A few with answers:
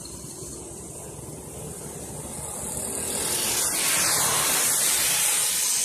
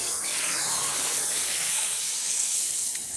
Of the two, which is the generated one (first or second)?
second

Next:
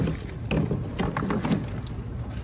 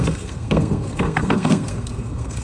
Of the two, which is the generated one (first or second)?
second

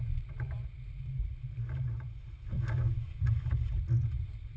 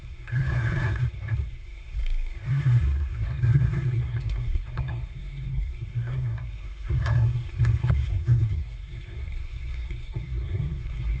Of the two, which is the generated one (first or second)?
second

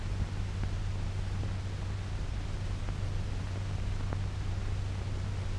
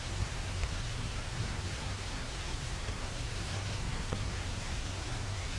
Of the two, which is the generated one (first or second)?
second